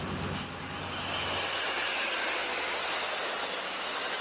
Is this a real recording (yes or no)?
yes